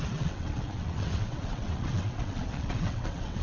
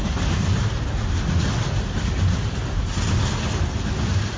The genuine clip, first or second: second